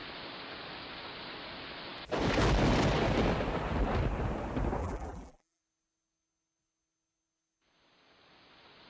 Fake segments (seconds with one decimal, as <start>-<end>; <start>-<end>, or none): 4.8-5.6